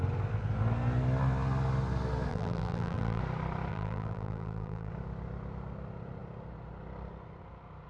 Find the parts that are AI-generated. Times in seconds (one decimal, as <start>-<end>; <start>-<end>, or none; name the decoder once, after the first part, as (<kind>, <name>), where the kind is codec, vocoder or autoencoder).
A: 2.3-3.2 (vocoder, BigVGAN v2); 3.7-4.9